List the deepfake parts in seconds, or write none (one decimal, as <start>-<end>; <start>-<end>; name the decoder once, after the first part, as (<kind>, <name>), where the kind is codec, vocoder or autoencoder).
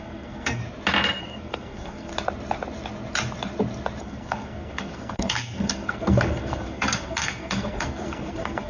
0.0-0.6 (codec, SNAC); 1.2-2.1; 4.0-8.7